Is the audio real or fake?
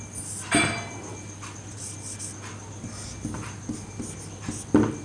real